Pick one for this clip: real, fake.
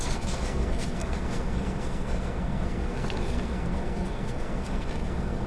fake